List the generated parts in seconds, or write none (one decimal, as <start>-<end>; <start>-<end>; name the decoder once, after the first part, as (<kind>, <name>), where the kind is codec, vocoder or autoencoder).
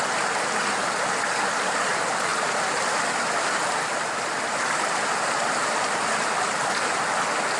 none